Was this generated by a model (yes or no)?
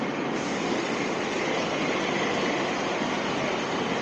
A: no